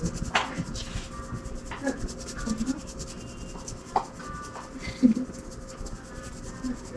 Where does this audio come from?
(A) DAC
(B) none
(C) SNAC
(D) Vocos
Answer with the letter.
B